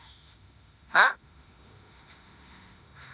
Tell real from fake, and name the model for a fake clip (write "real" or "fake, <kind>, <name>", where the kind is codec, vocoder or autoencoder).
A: fake, autoencoder, DAC-VAE